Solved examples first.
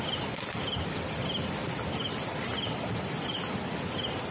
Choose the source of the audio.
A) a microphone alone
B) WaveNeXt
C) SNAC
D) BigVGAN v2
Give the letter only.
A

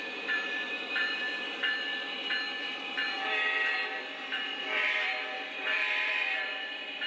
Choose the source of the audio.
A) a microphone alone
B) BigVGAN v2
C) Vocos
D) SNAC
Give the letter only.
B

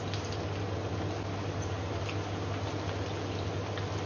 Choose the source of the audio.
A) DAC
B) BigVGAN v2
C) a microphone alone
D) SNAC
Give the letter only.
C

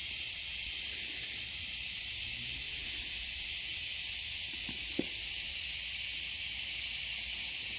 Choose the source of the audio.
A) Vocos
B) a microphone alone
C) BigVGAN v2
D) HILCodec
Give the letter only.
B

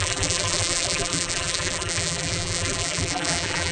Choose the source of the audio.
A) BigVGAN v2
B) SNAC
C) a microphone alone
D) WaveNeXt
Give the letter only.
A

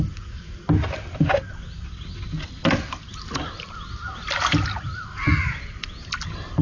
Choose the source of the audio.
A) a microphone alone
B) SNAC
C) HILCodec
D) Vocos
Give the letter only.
A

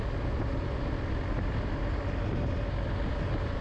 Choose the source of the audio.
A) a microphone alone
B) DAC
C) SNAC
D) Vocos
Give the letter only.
A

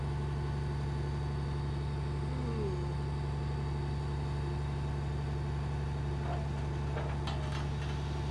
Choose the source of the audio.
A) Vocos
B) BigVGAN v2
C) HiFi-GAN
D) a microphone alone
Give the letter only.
D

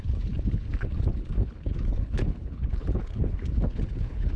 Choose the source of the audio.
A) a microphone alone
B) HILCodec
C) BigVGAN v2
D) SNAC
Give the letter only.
B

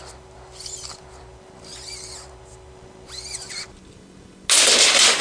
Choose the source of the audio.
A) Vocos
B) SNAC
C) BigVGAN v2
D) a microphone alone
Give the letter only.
D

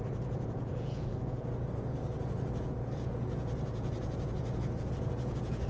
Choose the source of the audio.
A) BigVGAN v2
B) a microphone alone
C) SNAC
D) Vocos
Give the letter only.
D